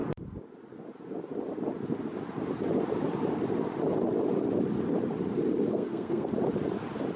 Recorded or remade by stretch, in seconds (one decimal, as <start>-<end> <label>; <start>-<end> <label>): 0.0-5.7 recorded; 5.7-6.3 remade; 6.3-7.2 recorded